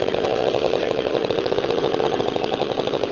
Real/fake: fake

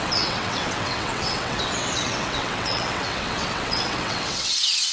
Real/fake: fake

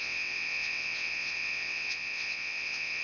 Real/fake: fake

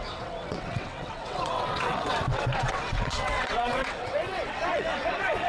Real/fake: fake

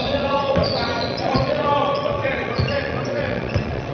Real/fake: fake